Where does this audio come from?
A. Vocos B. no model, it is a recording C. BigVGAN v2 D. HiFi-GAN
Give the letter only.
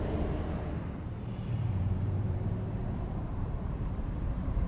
C